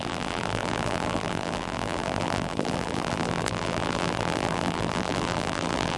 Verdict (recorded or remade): remade